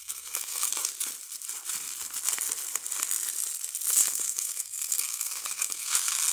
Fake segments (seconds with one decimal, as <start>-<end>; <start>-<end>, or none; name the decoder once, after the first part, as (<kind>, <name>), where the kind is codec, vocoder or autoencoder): 0.0-0.7 (codec, SNAC); 3.9-6.3